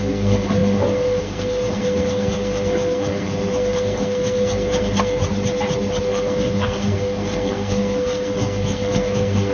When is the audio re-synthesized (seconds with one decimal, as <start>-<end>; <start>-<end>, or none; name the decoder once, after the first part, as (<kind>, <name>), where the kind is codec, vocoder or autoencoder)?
0.0-5.2 (codec, SNAC); 6.0-9.5